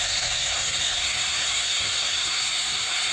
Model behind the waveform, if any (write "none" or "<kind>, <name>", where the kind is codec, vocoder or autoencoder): codec, SNAC